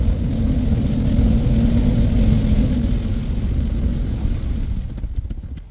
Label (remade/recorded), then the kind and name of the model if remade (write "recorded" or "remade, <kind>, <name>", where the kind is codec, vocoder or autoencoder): recorded